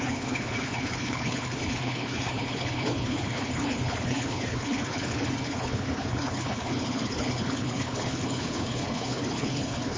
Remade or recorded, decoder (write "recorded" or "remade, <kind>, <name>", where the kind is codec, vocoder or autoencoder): remade, codec, HILCodec